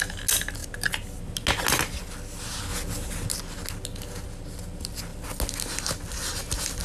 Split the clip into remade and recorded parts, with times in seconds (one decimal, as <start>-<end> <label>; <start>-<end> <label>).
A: 0.0-6.8 recorded